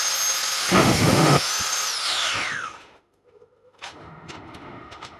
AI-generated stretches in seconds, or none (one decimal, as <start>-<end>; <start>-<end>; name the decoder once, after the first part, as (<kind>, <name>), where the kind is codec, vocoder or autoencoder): 0.6-1.5 (autoencoder, DAC-VAE); 2.0-5.2